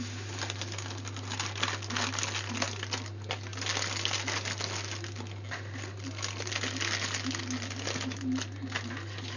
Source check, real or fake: real